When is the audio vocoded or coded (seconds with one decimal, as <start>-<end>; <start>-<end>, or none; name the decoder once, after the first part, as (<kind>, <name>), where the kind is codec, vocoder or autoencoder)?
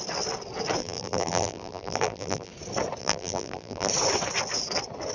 0.8-2.5 (vocoder, BigVGAN v2); 3.0-3.9